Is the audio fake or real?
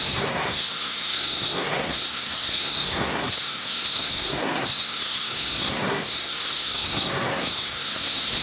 fake